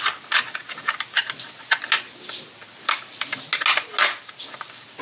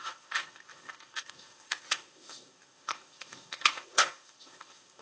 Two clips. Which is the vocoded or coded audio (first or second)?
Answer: second